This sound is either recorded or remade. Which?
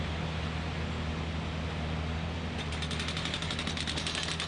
recorded